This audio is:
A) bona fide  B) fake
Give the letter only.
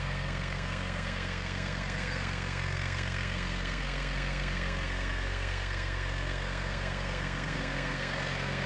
B